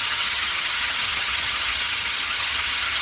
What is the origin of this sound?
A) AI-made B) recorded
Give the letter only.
A